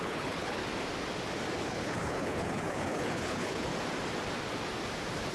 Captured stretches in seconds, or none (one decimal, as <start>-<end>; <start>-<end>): 0.6-1.6; 3.7-5.3